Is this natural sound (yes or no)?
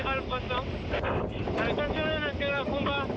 yes